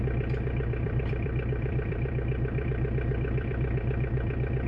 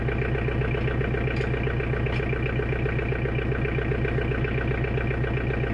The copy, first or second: first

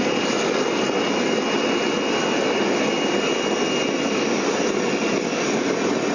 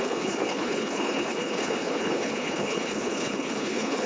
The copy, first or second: second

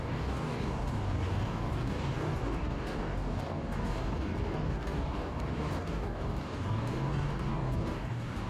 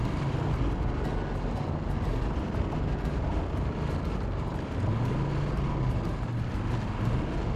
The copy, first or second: first